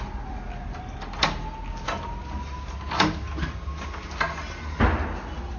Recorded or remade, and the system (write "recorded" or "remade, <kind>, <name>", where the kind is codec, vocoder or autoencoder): recorded